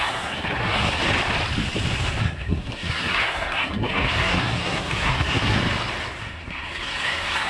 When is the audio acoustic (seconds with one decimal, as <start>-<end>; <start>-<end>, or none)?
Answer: 1.0-2.2; 5.6-6.2